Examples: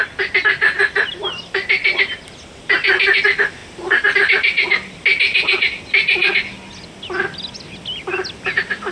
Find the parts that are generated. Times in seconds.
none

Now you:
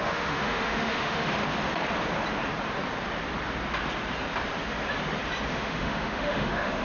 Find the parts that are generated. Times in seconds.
0.0-1.4; 5.5-6.8

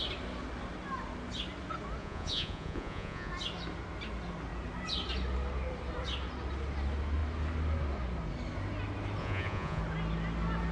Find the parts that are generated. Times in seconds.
2.0-3.3; 9.2-9.8

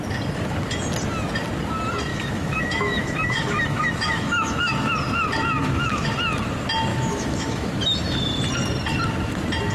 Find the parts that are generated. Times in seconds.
2.1-4.9; 5.6-6.1; 6.9-7.7

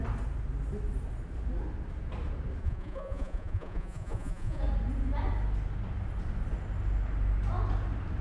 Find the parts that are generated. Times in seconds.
2.6-4.6

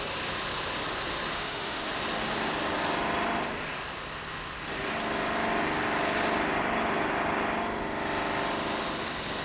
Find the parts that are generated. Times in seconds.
1.3-1.9

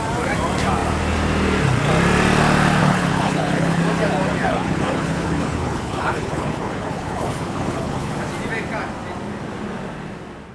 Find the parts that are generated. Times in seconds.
2.8-3.8; 4.4-8.1

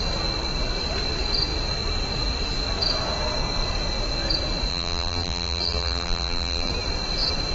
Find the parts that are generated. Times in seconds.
4.7-6.7